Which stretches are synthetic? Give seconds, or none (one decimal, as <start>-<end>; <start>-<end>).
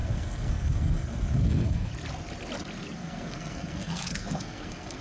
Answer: 0.0-1.9; 3.0-5.0